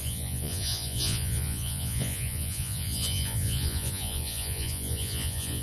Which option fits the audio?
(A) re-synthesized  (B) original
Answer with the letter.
A